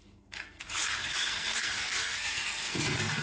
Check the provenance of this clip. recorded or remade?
remade